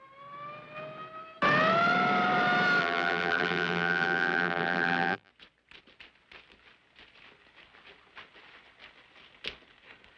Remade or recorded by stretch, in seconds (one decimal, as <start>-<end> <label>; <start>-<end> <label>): 0.0-2.8 recorded; 2.8-5.3 remade; 5.3-10.2 recorded